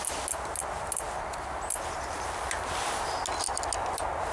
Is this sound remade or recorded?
recorded